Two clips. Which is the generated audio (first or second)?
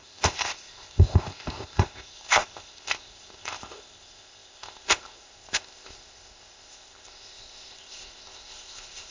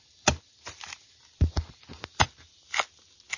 first